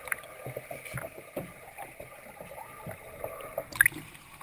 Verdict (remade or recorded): recorded